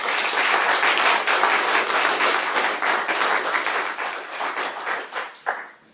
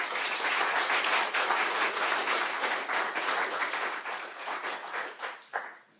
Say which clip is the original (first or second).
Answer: first